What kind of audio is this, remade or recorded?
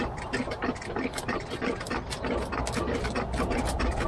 recorded